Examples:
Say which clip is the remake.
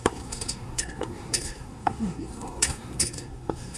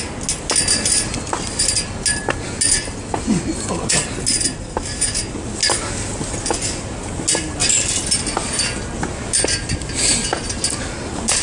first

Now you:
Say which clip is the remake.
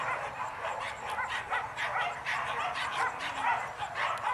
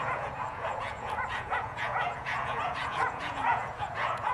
second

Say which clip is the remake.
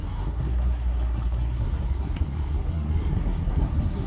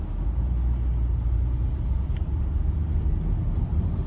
first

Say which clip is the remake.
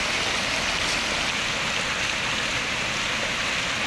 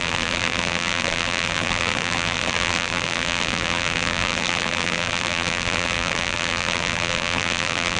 second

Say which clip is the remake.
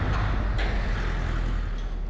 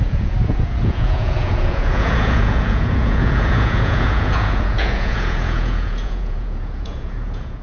second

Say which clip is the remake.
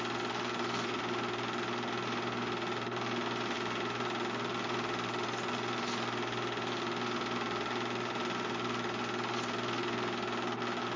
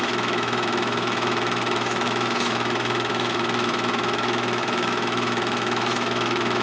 second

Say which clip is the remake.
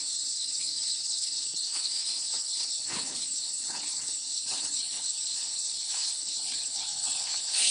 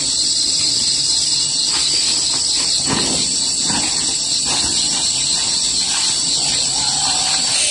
first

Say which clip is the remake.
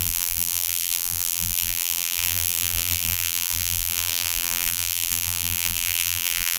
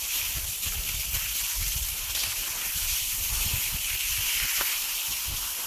first